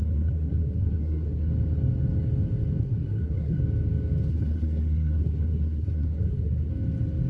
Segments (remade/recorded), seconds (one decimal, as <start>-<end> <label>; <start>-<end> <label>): 0.0-1.5 remade; 1.5-2.8 recorded; 2.8-3.6 remade; 3.6-4.3 recorded; 4.3-6.7 remade; 6.7-7.3 recorded